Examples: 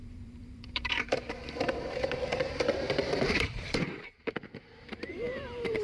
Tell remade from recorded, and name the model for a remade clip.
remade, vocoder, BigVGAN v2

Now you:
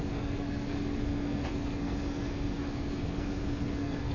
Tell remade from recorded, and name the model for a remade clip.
remade, codec, SNAC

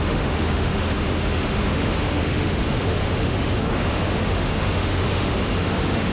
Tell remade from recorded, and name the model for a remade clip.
remade, autoencoder, DAC-VAE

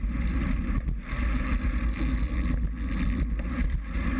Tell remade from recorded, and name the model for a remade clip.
recorded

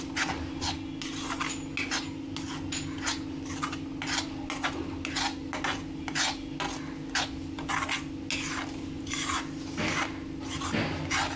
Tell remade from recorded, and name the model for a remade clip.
recorded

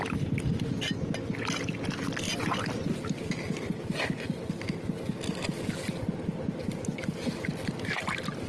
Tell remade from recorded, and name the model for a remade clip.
recorded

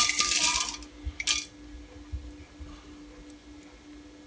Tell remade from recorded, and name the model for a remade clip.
recorded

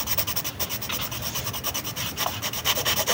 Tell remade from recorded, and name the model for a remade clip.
recorded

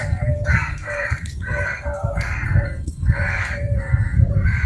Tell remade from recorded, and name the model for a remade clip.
remade, codec, SNAC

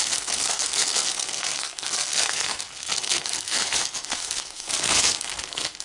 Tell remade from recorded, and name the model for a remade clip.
remade, codec, SNAC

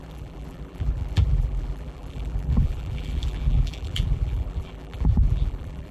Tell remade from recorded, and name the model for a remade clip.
remade, vocoder, BigVGAN v2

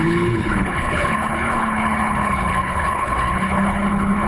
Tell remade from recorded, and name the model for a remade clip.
remade, codec, HILCodec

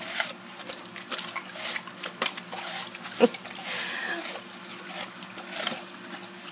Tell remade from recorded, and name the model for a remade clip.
recorded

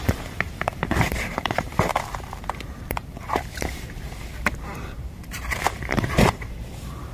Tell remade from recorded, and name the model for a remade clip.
remade, vocoder, BigVGAN v2